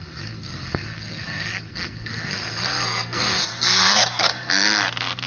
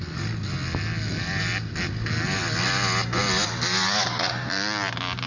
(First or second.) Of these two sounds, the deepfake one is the first